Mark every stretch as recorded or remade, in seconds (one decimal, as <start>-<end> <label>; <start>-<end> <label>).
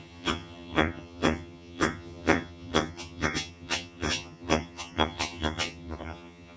0.0-6.6 remade